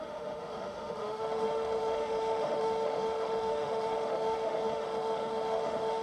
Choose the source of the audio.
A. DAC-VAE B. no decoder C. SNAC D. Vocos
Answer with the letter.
A